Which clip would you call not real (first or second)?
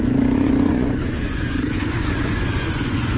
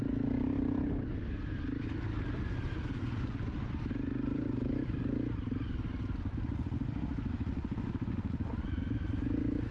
first